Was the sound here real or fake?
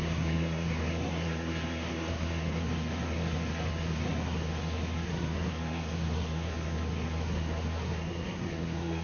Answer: fake